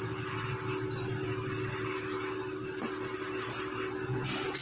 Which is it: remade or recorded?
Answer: remade